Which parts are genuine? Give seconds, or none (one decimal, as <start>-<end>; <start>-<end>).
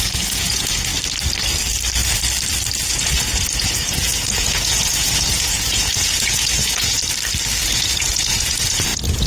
0.9-2.9; 7.0-7.6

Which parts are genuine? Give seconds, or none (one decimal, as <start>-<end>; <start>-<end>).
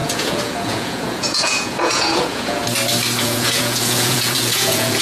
2.6-3.2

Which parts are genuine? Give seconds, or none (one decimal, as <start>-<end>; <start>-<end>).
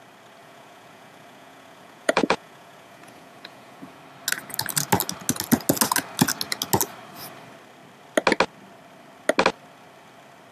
0.0-0.4; 4.0-10.5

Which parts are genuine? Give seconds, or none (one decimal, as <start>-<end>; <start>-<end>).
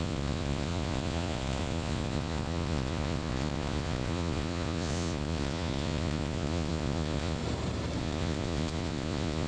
7.4-8.0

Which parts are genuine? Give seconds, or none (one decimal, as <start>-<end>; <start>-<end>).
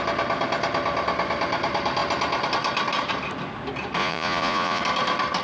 0.0-4.0; 4.8-5.4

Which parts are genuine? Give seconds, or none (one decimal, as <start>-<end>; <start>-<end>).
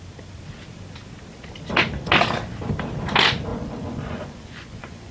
0.0-3.5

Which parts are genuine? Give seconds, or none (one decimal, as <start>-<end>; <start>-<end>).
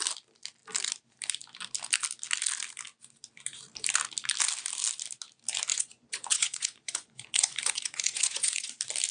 0.0-5.7; 8.7-9.1